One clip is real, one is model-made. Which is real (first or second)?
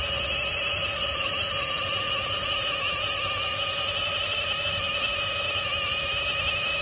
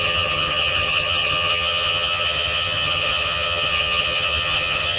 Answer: first